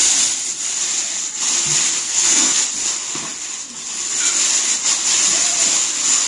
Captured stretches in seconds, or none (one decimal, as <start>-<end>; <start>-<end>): 0.0-2.0; 2.6-6.3